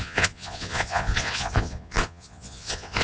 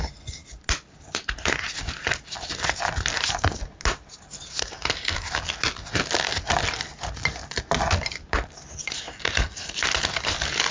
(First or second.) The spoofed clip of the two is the first